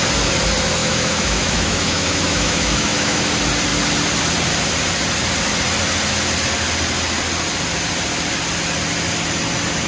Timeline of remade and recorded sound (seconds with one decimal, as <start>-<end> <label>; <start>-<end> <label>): 0.0-0.8 recorded; 0.8-3.2 remade; 3.2-9.9 recorded